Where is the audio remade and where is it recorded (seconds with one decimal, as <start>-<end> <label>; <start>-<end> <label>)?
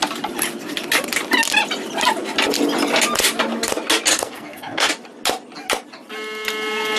0.0-4.1 recorded; 4.1-4.9 remade; 4.9-7.0 recorded